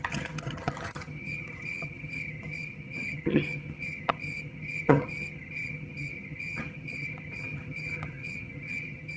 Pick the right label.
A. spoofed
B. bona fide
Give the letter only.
A